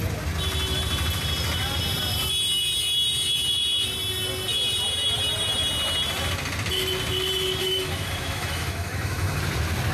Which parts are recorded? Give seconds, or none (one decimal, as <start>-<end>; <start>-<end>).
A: 0.0-7.6; 9.4-9.9